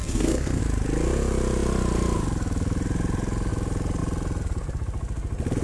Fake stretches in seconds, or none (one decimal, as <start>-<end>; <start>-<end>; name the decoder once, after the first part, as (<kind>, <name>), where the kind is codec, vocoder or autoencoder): 0.0-0.6 (codec, SNAC)